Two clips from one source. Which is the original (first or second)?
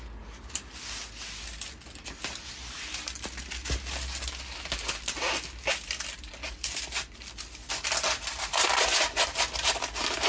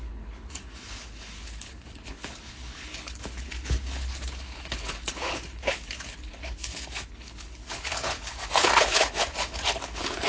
first